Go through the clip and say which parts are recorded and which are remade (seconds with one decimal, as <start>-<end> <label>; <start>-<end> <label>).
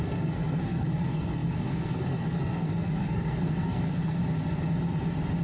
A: 0.0-4.2 remade; 4.2-5.4 recorded